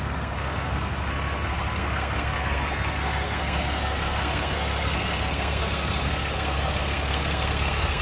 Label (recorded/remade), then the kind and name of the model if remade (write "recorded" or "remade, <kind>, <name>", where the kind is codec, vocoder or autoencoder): remade, codec, SNAC